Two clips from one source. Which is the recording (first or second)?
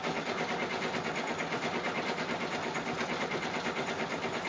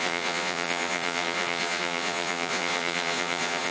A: first